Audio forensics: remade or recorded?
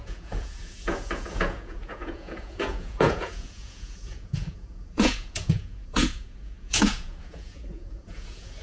remade